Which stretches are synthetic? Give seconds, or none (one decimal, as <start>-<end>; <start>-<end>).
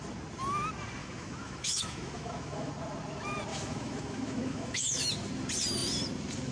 1.0-2.7; 3.5-5.1